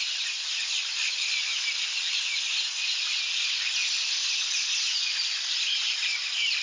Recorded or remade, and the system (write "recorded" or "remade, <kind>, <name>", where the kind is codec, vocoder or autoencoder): recorded